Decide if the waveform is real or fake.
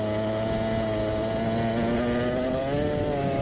real